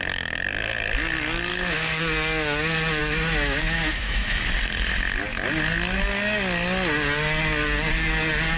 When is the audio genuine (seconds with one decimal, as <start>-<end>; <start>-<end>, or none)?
0.0-1.5; 2.0-3.0; 4.4-8.6